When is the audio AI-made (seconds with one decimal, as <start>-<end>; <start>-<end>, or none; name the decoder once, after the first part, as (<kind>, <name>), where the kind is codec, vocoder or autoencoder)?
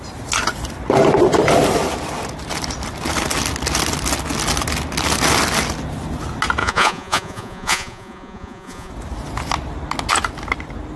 6.6-8.9 (vocoder, Vocos)